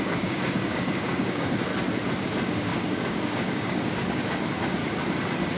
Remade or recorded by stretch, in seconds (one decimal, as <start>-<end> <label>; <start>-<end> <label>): 0.0-1.7 remade; 1.7-2.2 recorded; 2.2-4.8 remade; 4.8-5.6 recorded